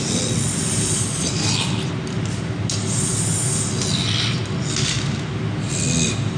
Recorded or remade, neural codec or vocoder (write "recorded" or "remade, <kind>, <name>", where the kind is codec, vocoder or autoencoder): recorded